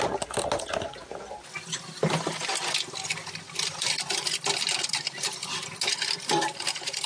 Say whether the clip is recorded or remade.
recorded